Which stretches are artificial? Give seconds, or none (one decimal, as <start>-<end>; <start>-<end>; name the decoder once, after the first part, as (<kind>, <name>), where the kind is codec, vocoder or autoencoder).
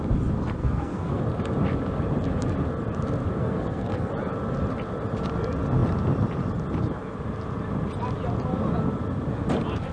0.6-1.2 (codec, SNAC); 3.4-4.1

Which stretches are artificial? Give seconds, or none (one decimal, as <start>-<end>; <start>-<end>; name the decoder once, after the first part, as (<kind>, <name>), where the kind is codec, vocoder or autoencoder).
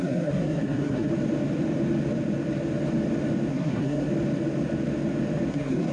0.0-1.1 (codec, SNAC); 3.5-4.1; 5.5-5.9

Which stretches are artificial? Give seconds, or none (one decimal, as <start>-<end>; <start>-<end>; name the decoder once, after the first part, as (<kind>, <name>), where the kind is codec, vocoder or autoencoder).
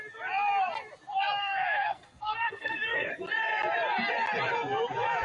1.4-3.1 (codec, SNAC)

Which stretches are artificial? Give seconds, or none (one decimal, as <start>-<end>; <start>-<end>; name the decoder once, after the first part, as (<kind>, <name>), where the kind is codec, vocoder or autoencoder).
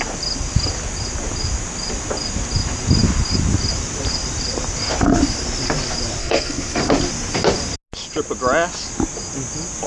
6.2-6.8 (codec, SNAC)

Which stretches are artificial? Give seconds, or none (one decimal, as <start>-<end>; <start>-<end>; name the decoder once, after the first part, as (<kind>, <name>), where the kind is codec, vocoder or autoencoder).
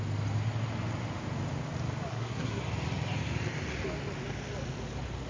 2.1-2.6 (codec, SNAC)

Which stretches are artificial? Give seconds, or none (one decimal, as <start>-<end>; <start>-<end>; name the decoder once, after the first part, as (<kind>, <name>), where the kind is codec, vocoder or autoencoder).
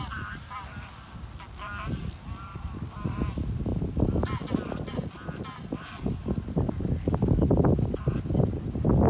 none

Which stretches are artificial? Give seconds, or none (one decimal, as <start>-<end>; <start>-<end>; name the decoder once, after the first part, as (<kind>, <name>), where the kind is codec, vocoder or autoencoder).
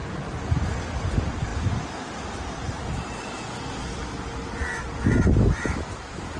none